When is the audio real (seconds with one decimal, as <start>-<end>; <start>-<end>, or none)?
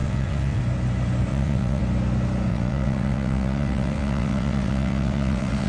0.6-1.3; 1.8-2.5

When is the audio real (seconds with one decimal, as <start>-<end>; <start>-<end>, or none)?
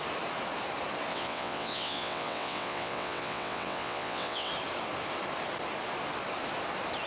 0.0-1.1; 4.5-7.1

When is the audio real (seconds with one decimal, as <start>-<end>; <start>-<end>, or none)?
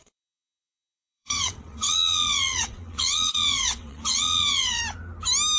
4.8-5.6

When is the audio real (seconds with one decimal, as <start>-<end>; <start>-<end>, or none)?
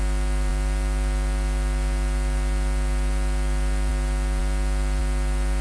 0.0-5.6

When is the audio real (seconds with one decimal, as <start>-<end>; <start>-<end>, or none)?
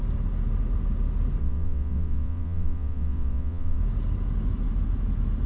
0.0-1.4; 3.8-5.5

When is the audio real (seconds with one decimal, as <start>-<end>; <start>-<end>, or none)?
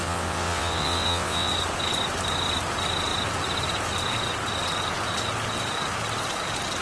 1.5-6.8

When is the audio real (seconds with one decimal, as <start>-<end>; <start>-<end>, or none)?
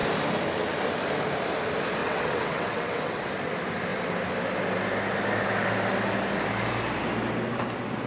0.0-2.0; 3.3-8.1